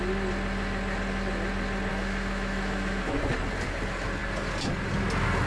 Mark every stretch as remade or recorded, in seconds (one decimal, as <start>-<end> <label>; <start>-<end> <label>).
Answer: 0.0-1.9 recorded; 1.9-3.2 remade; 3.2-5.5 recorded